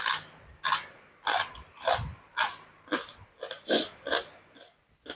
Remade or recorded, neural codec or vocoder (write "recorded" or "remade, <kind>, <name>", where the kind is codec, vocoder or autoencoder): recorded